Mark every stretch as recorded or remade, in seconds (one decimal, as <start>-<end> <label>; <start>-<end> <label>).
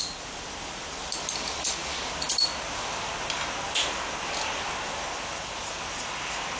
0.0-6.6 recorded